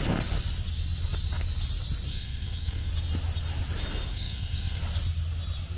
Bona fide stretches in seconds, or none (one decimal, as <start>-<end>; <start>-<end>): 0.0-2.1; 2.9-4.1; 4.8-5.8